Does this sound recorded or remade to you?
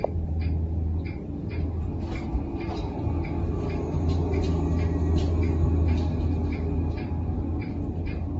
recorded